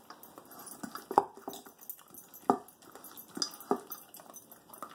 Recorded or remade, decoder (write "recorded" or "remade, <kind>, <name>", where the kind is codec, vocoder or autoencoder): recorded